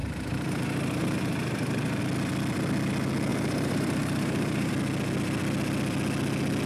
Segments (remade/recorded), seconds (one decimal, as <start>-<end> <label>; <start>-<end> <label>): 0.0-2.0 remade; 2.0-3.3 recorded; 3.3-4.7 remade; 4.7-6.7 recorded